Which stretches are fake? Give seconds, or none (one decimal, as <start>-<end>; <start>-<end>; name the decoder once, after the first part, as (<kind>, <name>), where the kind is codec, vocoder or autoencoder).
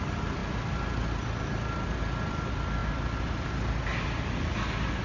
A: none